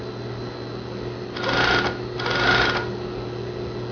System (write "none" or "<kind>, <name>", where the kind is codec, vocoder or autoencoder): none